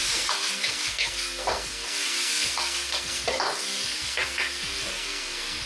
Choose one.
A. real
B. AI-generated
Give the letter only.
B